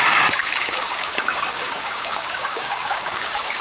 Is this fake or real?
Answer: fake